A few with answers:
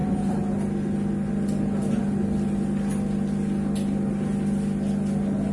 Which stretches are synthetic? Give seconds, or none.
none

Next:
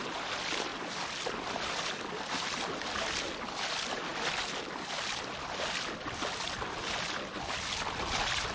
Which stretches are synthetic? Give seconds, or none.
none

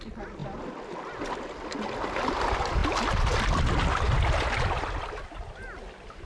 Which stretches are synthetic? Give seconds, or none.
none

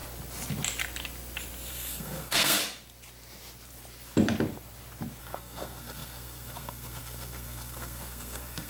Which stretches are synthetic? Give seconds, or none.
1.7-2.6 (codec, SNAC); 5.2-8.7

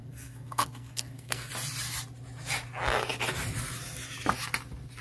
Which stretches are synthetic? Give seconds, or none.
0.0-1.5 (codec, SNAC)